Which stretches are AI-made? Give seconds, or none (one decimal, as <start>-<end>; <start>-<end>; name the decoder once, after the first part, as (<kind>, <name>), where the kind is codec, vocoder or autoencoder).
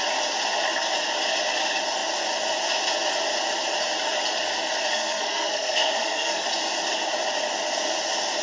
4.9-6.4 (codec, SNAC)